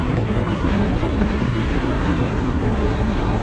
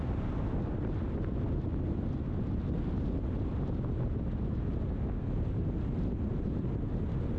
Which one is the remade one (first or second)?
first